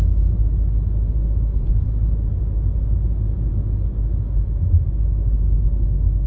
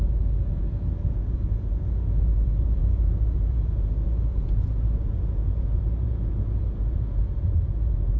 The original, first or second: first